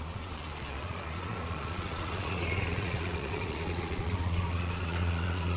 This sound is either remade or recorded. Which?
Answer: remade